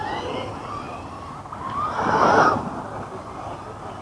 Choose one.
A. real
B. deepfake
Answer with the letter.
A